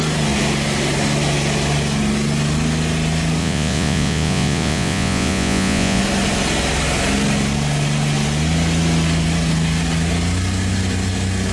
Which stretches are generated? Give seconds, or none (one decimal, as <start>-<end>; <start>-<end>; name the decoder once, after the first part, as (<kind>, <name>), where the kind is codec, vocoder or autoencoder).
3.4-6.0 (vocoder, Vocos)